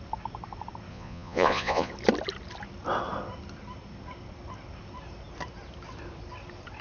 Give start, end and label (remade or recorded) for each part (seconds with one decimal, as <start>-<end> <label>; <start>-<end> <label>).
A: 0.0-0.9 recorded; 0.9-1.9 remade; 1.9-6.8 recorded